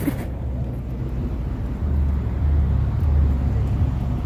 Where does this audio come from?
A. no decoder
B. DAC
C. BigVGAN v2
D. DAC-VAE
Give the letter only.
A